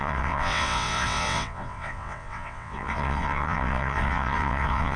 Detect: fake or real fake